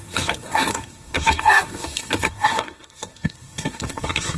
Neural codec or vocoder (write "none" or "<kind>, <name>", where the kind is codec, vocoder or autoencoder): codec, SNAC